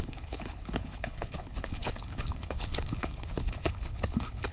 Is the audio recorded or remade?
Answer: remade